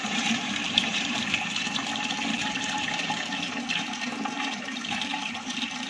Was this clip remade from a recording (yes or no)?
yes